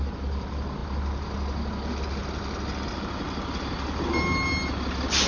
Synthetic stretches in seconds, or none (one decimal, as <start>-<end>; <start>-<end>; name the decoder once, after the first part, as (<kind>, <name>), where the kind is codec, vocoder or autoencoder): none